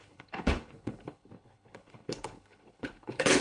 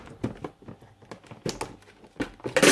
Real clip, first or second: second